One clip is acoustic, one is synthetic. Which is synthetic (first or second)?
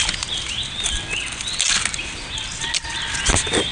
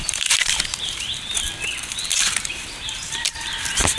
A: second